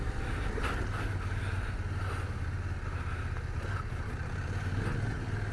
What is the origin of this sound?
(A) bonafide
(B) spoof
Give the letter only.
A